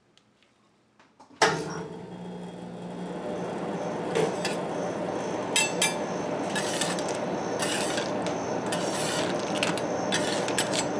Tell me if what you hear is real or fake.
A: real